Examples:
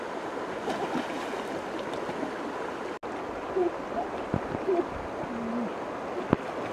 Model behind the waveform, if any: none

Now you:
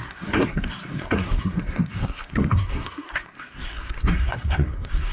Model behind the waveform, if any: codec, SNAC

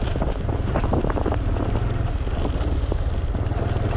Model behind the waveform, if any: none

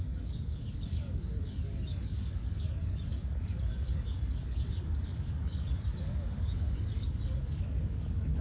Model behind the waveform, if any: codec, DAC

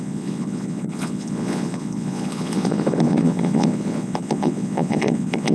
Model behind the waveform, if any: vocoder, Vocos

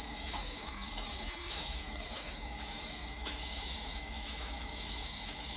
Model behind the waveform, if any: autoencoder, DAC-VAE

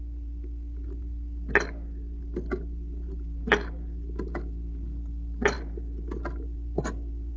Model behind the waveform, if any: none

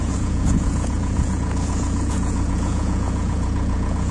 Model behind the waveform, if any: vocoder, Vocos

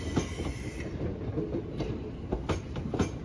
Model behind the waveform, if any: none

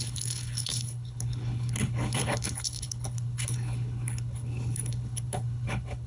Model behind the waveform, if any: codec, HILCodec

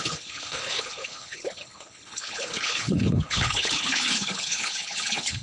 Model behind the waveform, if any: codec, HILCodec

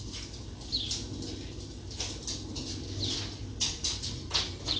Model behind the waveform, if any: none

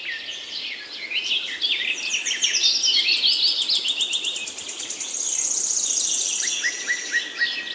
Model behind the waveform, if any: none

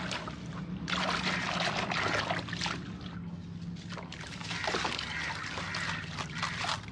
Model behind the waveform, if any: none